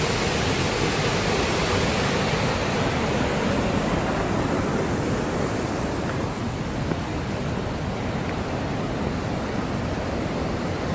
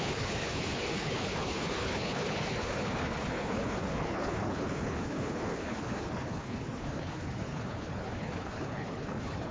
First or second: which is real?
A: first